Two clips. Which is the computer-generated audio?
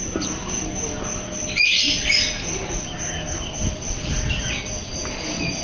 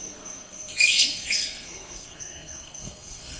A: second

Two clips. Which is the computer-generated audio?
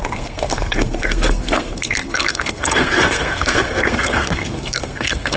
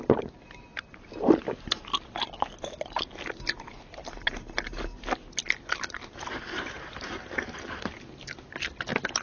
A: first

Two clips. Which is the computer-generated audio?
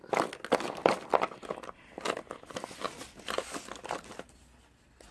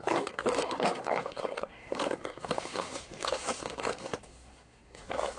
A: second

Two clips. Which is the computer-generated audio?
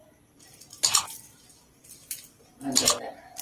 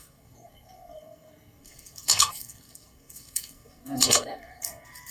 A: second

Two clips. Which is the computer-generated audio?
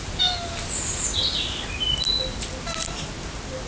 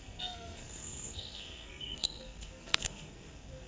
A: second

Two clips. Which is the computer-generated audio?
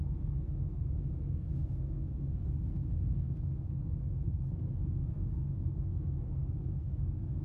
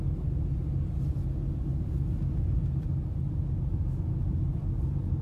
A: first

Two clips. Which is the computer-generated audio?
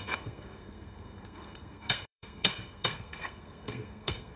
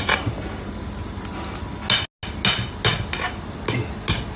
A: first